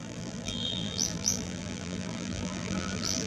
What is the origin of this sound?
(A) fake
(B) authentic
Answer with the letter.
A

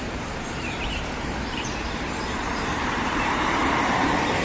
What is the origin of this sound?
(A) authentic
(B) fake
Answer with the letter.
B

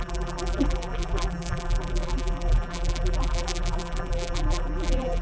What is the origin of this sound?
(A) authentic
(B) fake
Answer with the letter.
B